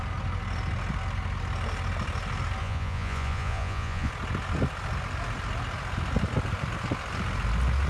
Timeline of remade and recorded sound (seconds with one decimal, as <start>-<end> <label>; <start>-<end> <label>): 0.0-2.6 recorded; 2.6-4.1 remade; 4.1-7.9 recorded